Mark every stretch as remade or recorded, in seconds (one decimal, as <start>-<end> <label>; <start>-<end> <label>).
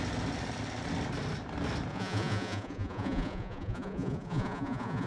0.0-1.9 recorded; 1.9-5.1 remade